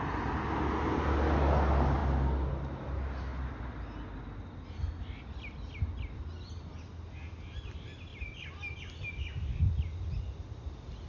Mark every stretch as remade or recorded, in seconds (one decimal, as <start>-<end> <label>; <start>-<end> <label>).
0.0-11.1 recorded